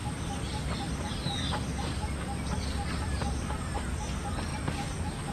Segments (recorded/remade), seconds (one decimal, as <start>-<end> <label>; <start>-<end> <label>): 0.0-3.2 remade; 3.2-4.5 recorded; 4.5-5.3 remade